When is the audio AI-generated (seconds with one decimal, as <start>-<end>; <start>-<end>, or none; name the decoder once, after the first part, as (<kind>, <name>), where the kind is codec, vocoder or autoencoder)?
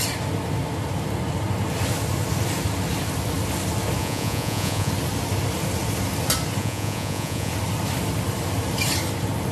4.0-4.9 (vocoder, Vocos); 6.6-7.5